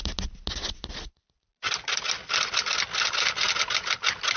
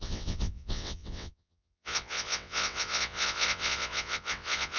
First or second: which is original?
first